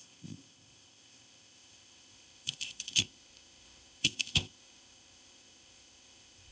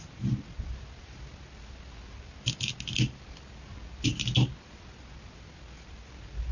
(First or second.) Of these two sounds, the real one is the second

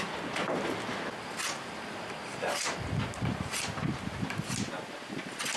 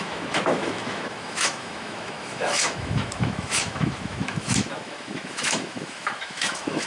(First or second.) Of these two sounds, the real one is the first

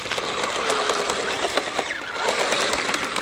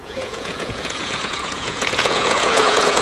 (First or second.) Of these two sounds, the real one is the first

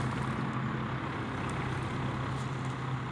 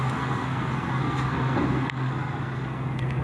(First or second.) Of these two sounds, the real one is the first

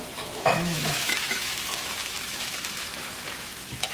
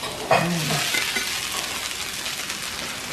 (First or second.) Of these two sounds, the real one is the second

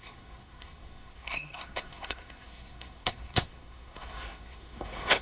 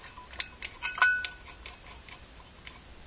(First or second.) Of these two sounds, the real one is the second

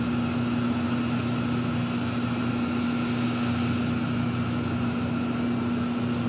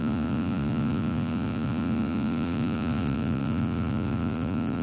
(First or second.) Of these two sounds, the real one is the first